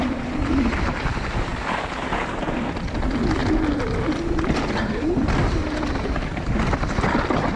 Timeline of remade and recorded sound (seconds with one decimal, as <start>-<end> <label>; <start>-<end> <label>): 0.0-1.5 remade; 1.5-2.4 recorded; 2.4-3.4 remade; 3.4-7.6 recorded